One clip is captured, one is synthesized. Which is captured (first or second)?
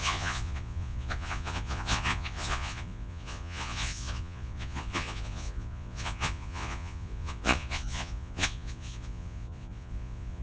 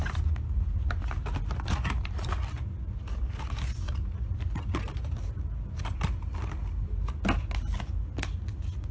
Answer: second